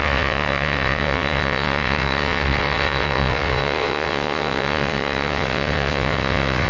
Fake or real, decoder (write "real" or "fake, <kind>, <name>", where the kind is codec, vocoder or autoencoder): fake, vocoder, WaveNeXt